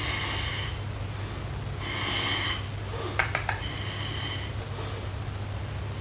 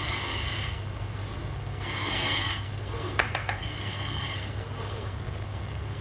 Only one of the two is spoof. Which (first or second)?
second